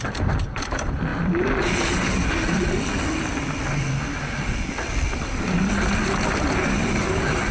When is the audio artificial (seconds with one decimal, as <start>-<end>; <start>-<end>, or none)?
none